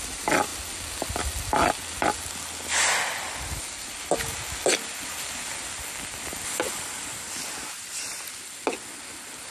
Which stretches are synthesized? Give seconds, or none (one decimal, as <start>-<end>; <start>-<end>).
none